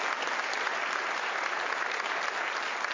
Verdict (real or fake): real